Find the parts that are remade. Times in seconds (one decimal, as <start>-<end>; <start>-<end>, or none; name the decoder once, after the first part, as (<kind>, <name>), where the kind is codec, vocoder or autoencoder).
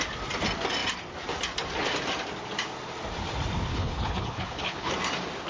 3.7-4.9 (codec, HILCodec)